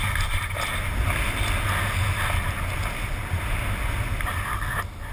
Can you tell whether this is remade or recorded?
recorded